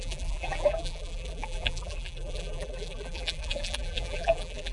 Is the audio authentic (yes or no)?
no